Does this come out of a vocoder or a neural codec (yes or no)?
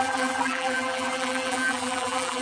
yes